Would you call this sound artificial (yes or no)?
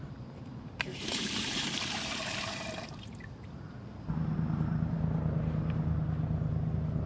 yes